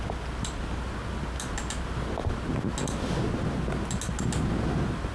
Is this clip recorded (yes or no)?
yes